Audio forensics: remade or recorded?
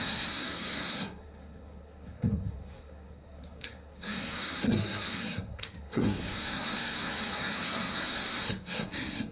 remade